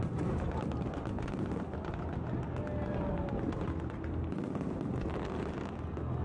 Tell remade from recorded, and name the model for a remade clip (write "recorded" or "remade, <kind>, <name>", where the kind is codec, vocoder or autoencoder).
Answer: recorded